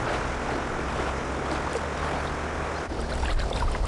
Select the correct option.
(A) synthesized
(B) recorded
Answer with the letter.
B